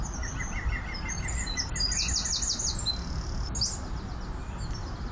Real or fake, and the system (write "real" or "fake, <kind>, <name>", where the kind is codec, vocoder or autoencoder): real